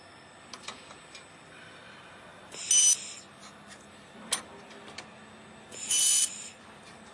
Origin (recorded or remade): recorded